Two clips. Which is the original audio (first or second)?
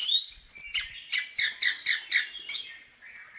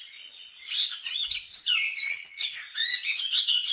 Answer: first